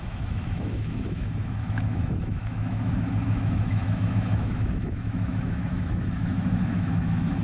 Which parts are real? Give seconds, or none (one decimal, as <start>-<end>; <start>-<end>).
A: none